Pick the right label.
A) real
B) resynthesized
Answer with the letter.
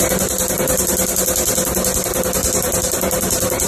A